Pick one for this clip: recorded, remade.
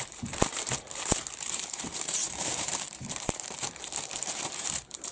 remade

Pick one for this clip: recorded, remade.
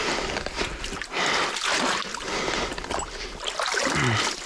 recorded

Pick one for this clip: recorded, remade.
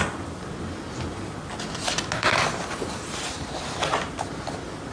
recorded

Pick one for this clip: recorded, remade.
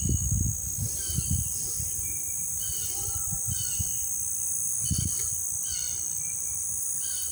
remade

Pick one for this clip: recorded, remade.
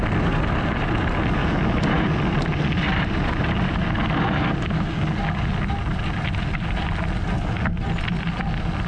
recorded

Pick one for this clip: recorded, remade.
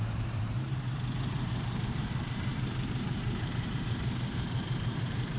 remade